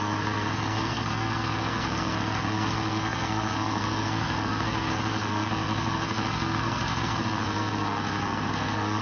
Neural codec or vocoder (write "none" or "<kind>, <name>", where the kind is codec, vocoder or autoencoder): codec, SNAC